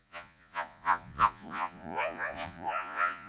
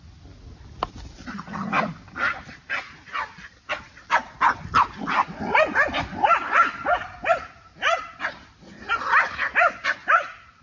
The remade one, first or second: first